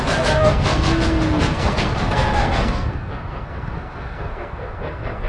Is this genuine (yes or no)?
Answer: no